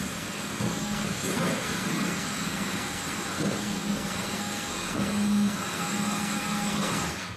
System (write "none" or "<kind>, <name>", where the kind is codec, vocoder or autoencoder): codec, SNAC